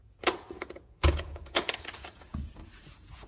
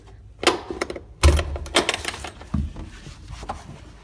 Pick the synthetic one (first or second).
first